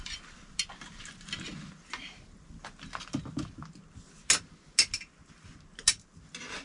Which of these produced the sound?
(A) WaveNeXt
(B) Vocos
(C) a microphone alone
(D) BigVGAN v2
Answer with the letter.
C